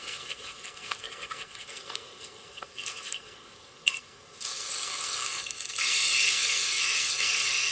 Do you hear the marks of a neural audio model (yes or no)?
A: yes